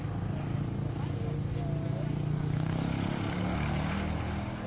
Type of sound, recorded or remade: recorded